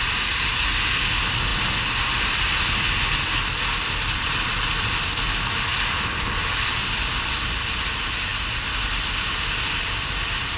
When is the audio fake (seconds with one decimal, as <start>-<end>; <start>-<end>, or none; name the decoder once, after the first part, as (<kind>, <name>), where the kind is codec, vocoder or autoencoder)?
none